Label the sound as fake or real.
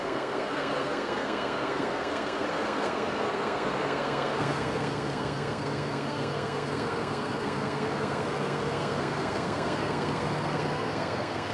fake